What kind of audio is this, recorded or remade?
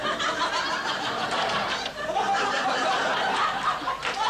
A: recorded